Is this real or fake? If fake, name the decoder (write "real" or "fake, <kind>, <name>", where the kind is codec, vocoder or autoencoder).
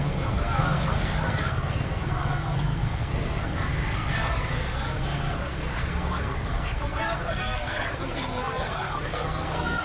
fake, codec, SNAC